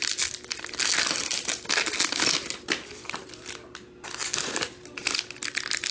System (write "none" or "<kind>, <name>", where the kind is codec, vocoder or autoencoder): none